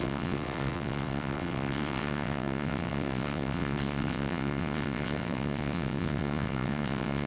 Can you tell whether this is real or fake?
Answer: fake